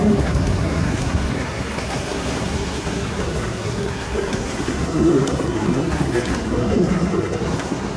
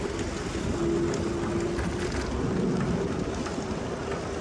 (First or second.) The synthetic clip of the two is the first